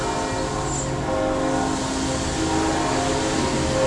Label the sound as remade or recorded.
recorded